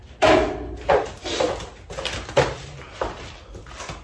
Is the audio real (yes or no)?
yes